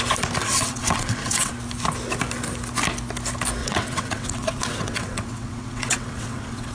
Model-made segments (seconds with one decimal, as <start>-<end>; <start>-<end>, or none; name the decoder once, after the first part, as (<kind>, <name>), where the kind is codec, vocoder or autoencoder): 0.4-1.5 (vocoder, WaveNeXt); 3.6-6.7